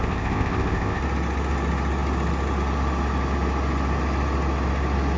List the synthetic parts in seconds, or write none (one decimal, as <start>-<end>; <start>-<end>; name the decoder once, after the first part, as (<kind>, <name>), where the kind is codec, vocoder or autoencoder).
0.0-1.0 (codec, ZipCodec)